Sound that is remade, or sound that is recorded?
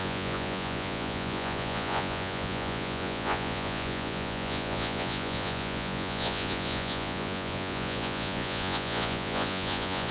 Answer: remade